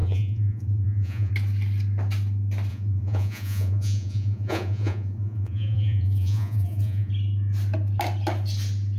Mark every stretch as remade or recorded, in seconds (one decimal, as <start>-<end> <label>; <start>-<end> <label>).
0.0-1.3 remade; 1.3-2.7 recorded; 2.7-7.1 remade; 7.1-9.0 recorded